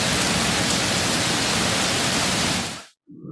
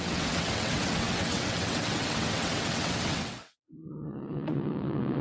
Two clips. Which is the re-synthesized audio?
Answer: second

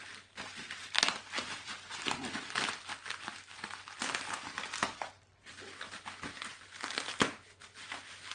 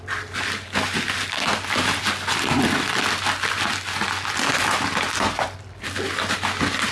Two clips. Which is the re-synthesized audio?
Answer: first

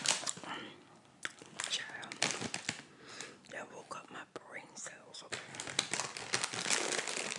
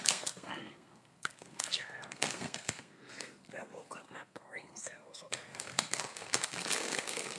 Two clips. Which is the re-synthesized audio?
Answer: second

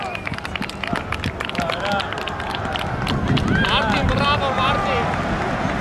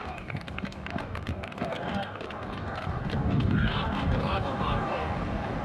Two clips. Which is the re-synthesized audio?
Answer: second